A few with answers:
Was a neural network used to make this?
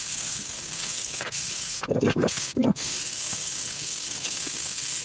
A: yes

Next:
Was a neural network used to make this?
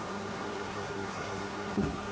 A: yes